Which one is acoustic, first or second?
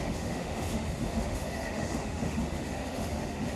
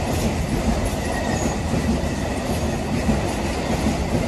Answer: second